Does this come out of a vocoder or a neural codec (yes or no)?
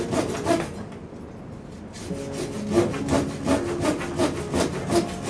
no